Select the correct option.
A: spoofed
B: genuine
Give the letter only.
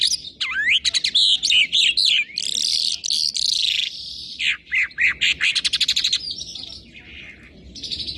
B